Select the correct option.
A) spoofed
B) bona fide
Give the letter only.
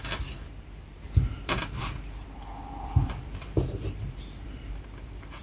A